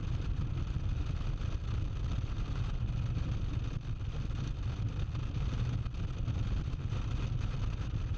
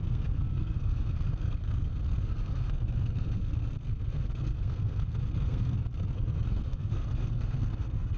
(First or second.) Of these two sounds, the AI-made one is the second